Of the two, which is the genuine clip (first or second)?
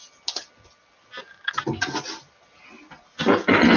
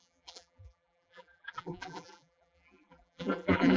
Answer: first